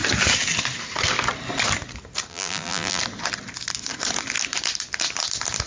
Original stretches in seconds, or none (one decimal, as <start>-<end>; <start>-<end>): 0.0-2.3; 3.0-5.7